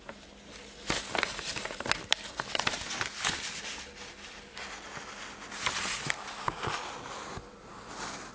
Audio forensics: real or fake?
real